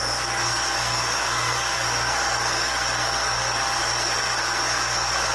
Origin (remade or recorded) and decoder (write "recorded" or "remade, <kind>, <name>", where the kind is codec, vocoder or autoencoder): remade, codec, SNAC